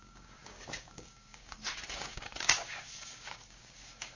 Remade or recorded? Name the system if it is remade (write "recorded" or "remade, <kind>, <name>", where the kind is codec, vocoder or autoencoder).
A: remade, codec, DAC